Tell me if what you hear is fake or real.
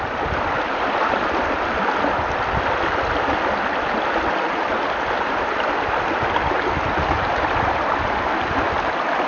real